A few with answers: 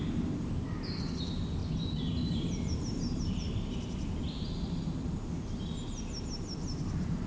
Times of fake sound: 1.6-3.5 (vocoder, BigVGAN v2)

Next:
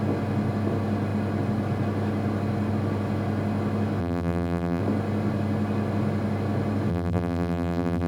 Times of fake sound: 4.0-4.8 (vocoder, BigVGAN v2); 6.9-8.1

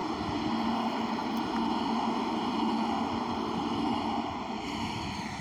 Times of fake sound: 0.7-1.2 (vocoder, BigVGAN v2); 3.2-5.4

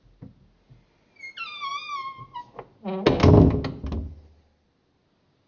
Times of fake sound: none

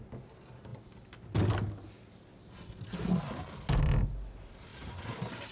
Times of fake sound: 4.7-5.5 (vocoder, BigVGAN v2)

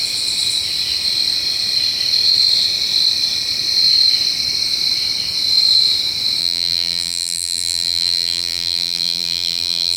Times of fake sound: 6.4-10.0 (vocoder, BigVGAN v2)

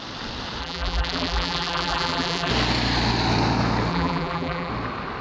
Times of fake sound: 0.6-2.5 (vocoder, BigVGAN v2); 3.9-4.7

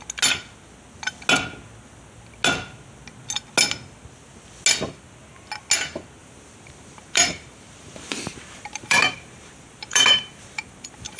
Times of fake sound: 6.2-11.2 (vocoder, BigVGAN v2)